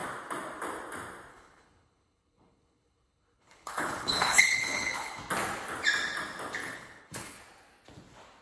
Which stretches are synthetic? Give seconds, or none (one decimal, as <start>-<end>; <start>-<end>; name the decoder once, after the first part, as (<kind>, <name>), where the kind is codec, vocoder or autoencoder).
1.3-5.2 (codec, HILCodec); 6.6-7.4